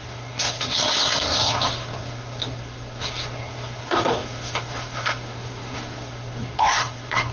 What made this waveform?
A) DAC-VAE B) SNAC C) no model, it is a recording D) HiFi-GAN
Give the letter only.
B